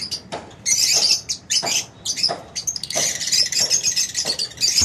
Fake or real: fake